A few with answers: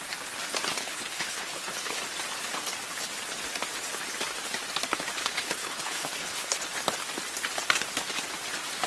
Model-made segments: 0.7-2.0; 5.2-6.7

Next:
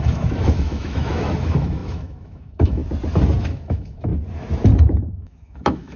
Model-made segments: 0.0-2.8; 3.4-4.1; 5.1-6.0

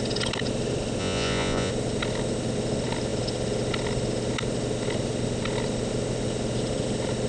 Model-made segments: 1.0-1.7

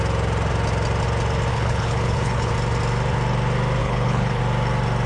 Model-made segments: 1.5-2.5; 3.8-4.4